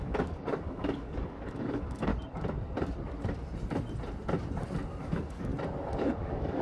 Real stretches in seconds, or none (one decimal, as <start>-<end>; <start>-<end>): 2.1-5.0; 5.5-6.0